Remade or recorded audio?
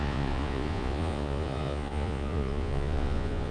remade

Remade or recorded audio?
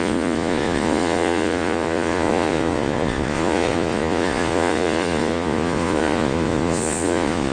remade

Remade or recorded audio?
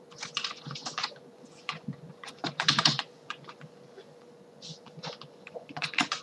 remade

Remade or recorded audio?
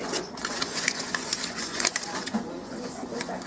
remade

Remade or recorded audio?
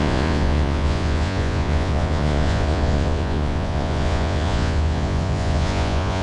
remade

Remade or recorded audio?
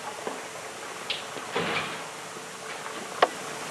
recorded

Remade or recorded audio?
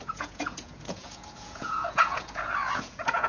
remade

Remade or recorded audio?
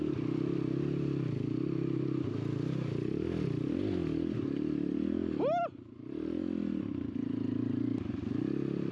recorded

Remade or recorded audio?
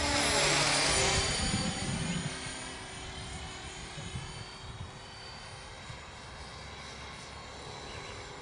recorded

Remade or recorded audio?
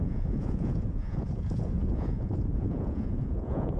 remade